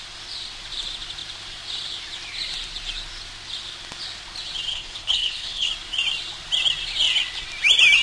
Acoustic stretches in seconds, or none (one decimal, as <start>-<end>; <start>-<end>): 0.0-4.7; 5.7-8.0